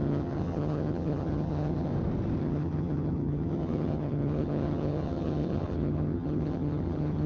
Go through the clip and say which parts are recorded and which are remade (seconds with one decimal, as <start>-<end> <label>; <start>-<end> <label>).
0.0-1.9 remade; 1.9-2.4 recorded; 2.4-7.3 remade